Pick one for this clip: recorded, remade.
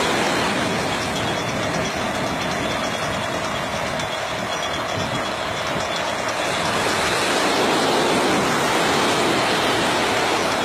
recorded